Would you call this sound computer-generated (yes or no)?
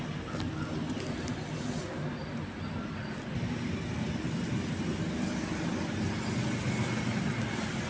no